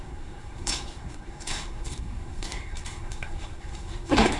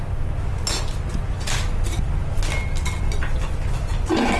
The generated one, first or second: first